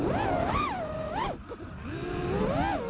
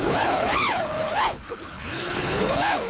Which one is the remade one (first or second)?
second